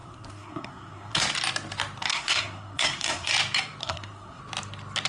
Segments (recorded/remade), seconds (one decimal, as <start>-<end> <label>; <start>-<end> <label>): 0.0-1.2 remade; 1.2-2.1 recorded; 2.1-3.3 remade; 3.3-3.8 recorded; 3.8-4.4 remade; 4.4-5.1 recorded

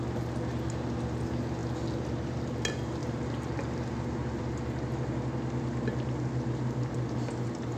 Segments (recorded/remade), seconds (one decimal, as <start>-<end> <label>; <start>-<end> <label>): 0.0-7.8 recorded

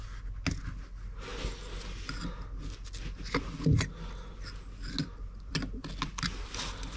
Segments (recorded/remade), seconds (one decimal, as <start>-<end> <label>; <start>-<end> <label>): 0.0-7.0 recorded